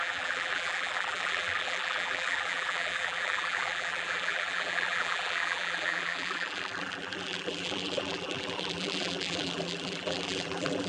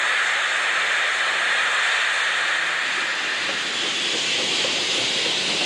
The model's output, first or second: first